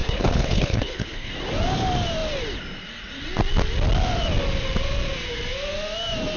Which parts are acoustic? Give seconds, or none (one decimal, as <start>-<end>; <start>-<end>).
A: 1.3-6.4